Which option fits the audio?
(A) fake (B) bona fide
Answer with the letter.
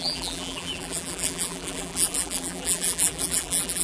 A